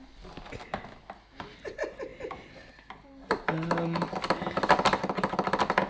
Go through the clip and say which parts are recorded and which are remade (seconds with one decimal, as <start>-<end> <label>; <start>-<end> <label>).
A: 0.0-5.9 recorded